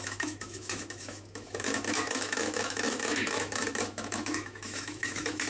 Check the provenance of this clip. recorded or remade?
remade